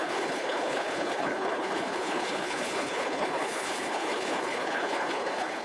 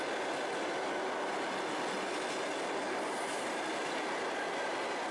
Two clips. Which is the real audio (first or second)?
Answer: second